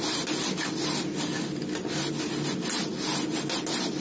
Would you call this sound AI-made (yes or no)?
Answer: no